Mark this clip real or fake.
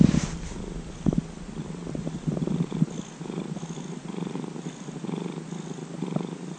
real